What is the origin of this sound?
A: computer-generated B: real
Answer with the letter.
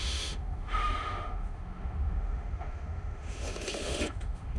A